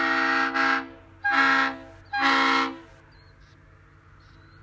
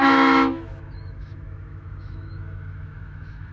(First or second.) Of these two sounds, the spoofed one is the second